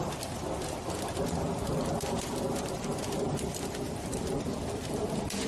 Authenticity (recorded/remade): recorded